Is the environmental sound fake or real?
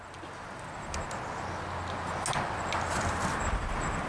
real